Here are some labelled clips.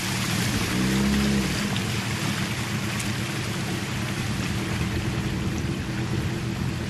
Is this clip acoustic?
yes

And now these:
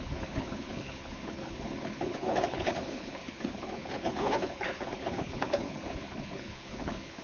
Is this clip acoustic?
no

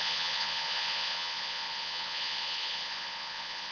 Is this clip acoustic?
no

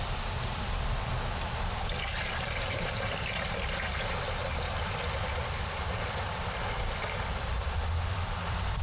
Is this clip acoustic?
no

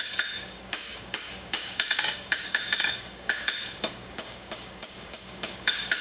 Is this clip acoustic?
no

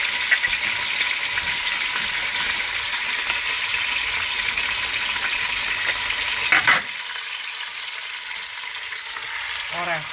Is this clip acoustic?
yes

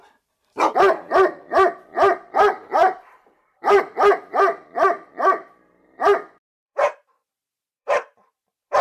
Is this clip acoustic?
no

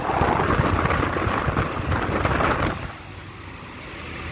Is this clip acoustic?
yes